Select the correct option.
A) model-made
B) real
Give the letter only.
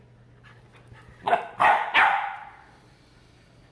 B